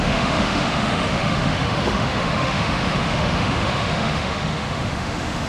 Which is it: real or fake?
fake